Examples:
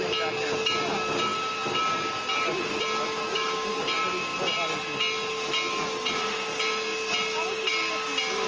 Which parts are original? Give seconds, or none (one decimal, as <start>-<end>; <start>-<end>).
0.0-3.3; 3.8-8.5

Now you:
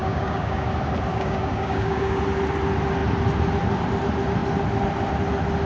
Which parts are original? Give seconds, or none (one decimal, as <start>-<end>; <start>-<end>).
0.7-1.1; 2.2-5.7

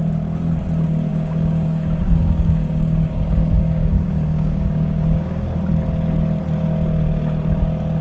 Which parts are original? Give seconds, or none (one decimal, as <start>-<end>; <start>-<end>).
0.0-1.1; 5.6-8.0